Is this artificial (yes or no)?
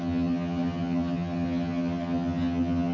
yes